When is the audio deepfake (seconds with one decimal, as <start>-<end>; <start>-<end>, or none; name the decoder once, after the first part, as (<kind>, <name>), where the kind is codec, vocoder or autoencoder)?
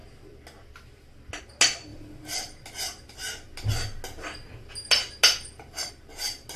none